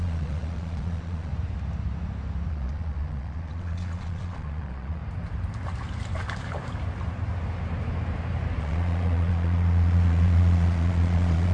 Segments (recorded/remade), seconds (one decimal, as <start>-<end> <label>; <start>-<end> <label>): 0.0-1.3 remade; 1.3-2.5 recorded; 2.5-5.0 remade; 5.0-8.6 recorded; 8.6-11.5 remade